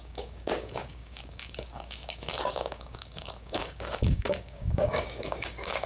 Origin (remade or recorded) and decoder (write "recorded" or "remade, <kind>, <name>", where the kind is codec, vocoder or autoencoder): remade, codec, DAC